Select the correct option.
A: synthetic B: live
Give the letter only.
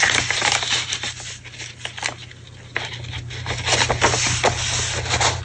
B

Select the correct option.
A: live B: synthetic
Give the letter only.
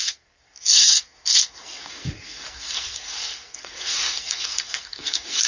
B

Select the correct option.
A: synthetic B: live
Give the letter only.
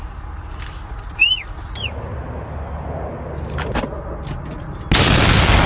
B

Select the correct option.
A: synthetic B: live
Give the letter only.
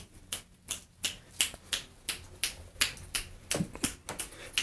B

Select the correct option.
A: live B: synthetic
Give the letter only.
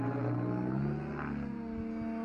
A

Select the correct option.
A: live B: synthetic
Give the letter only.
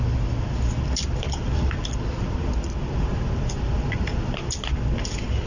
A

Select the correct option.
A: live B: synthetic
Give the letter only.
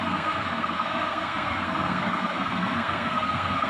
B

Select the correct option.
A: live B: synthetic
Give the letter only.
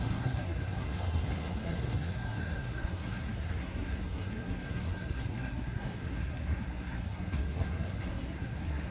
B